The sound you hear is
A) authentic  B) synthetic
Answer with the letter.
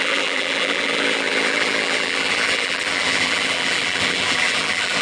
B